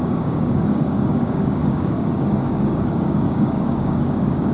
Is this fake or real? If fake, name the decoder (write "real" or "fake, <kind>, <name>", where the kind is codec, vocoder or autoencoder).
fake, codec, DAC